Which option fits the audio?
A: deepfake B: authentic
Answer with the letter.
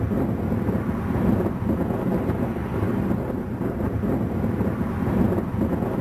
B